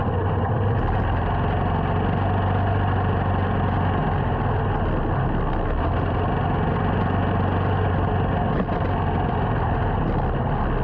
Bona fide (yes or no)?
yes